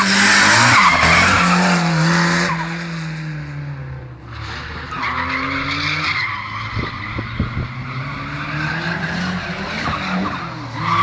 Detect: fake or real real